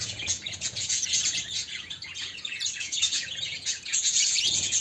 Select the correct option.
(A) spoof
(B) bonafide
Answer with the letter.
A